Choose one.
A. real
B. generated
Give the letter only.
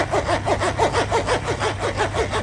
A